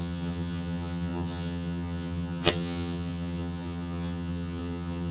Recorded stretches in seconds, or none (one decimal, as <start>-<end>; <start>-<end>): none

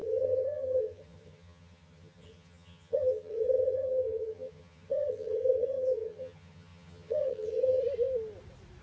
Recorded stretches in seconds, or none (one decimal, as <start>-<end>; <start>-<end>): 7.8-8.8

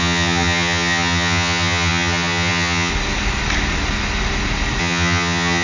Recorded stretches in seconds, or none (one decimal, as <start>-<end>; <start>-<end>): 2.9-4.8

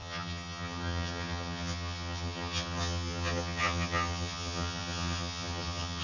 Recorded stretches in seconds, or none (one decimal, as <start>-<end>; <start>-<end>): none

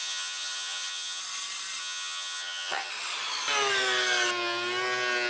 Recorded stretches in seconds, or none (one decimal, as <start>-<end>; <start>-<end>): 1.2-1.8; 2.9-5.3